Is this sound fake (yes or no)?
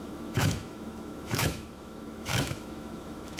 yes